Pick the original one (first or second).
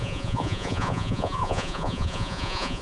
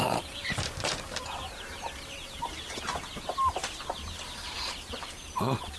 second